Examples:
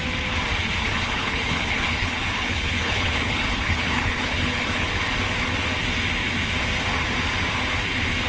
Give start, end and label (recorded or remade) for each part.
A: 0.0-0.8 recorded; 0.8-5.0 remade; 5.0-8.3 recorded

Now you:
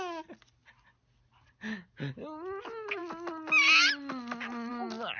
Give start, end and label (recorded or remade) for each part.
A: 0.0-5.2 recorded

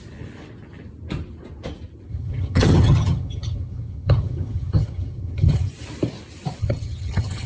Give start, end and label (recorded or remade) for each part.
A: 0.0-2.1 recorded; 2.1-5.7 remade; 5.7-6.6 recorded; 6.6-7.5 remade